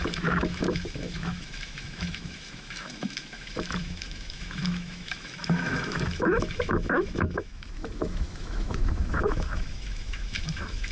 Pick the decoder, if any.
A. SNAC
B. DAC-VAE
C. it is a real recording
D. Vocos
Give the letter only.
B